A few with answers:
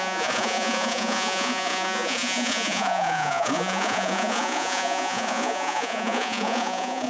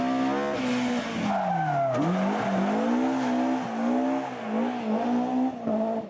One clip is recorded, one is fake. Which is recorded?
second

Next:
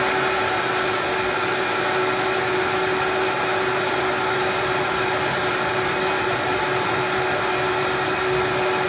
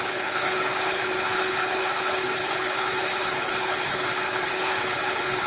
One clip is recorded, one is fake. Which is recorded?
first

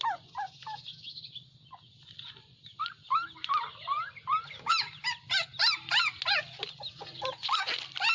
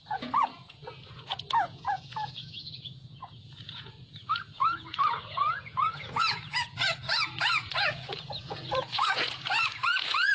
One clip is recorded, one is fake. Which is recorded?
first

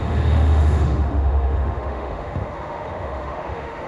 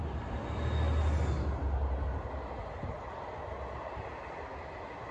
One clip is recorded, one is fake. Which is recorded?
second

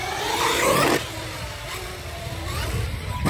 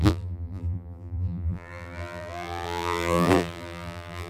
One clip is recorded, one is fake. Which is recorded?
first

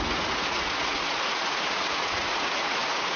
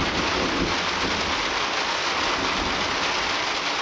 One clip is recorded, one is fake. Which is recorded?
second